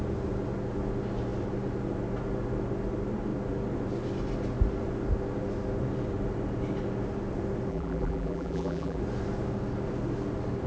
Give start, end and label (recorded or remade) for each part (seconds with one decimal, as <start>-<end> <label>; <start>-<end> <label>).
0.0-7.7 recorded; 7.7-9.0 remade; 9.0-10.7 recorded